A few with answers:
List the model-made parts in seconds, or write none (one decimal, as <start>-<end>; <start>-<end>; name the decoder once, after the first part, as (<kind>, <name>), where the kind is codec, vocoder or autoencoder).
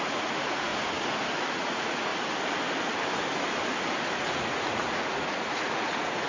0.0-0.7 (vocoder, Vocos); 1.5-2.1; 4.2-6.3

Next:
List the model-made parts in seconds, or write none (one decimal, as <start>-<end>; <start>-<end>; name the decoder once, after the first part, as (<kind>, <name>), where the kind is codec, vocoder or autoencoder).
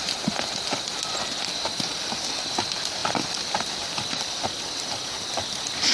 none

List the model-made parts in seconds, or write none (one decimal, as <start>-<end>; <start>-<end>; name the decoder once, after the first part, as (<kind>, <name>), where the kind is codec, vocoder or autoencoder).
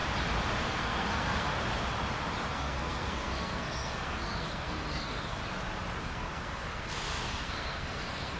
0.6-1.5 (codec, SNAC); 2.5-5.4; 6.0-8.4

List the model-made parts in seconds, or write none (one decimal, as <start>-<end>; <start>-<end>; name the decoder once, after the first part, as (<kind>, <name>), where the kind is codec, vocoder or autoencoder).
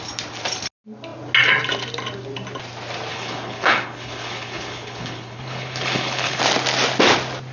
3.1-6.4 (codec, HILCodec)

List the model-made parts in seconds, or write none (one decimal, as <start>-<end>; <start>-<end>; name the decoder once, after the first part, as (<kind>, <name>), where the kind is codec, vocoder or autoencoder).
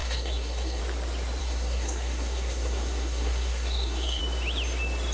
0.0-0.8 (codec, SNAC); 1.4-4.2